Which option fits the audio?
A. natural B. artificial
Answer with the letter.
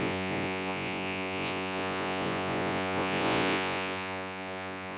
B